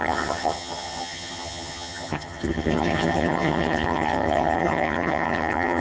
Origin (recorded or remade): remade